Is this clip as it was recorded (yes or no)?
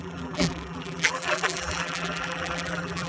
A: no